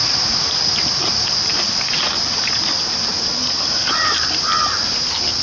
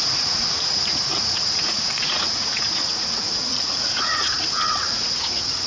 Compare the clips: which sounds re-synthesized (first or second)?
second